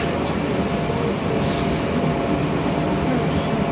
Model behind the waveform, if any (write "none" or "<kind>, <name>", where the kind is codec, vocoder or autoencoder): none